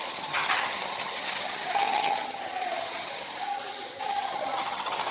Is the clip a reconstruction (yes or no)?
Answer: yes